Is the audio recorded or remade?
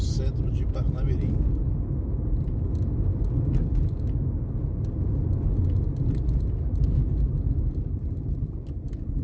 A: recorded